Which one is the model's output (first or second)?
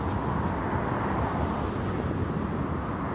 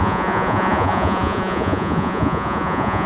second